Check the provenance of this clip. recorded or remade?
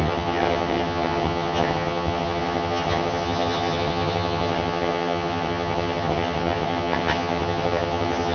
remade